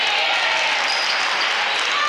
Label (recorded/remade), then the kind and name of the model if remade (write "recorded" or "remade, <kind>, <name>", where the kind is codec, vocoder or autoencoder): recorded